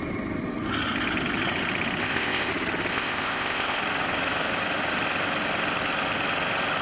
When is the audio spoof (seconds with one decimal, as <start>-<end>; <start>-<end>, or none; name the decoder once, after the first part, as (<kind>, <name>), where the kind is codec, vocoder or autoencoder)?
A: 2.0-2.5 (codec, ZipCodec); 2.9-3.8